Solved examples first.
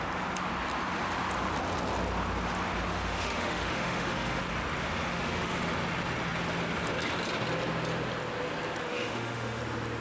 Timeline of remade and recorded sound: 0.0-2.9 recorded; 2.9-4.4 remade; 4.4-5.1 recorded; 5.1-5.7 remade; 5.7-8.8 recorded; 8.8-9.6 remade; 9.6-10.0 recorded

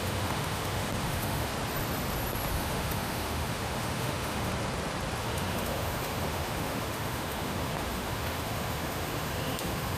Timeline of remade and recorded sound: 0.0-1.5 remade; 1.5-2.5 recorded; 2.5-4.5 remade; 4.5-5.2 recorded; 5.2-10.0 remade

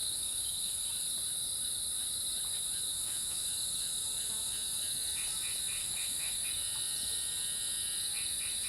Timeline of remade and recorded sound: 0.0-0.9 remade; 0.9-2.9 recorded; 2.9-3.5 remade; 3.5-5.8 recorded; 5.8-6.5 remade; 6.5-8.7 recorded